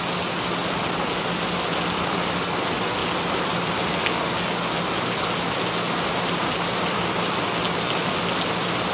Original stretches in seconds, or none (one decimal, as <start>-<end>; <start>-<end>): 0.0-8.9